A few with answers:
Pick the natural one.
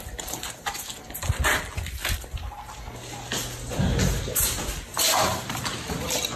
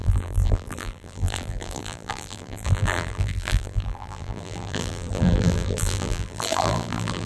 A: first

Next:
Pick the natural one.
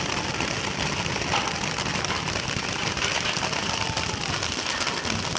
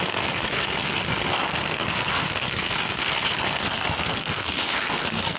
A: first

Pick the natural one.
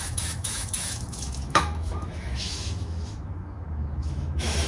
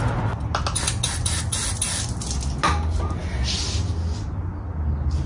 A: second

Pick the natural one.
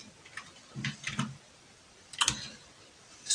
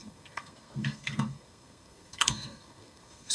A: first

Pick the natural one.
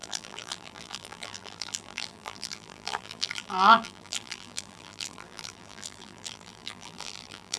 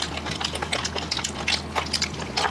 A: second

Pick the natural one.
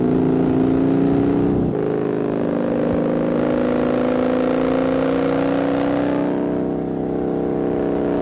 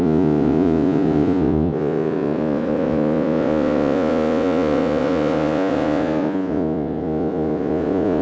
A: first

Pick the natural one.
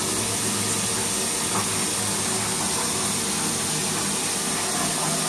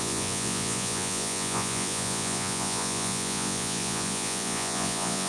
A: first